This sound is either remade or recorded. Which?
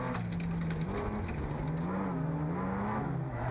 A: recorded